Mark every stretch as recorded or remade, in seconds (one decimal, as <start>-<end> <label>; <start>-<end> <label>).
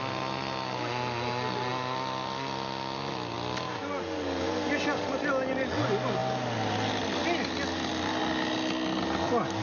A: 0.0-9.6 recorded